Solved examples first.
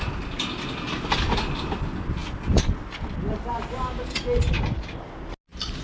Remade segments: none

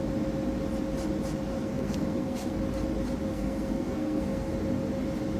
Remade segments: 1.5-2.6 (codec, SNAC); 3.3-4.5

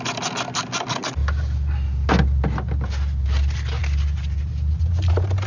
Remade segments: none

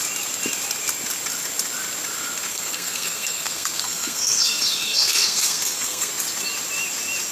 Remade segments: 2.5-6.1 (codec, SNAC)

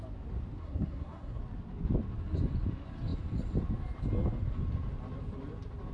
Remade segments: 0.6-1.4 (codec, SNAC)